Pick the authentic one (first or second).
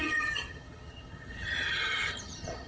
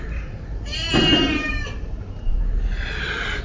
second